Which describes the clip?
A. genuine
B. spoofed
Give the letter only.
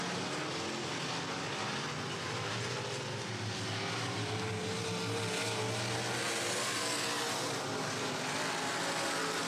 A